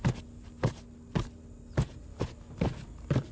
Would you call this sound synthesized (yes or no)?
no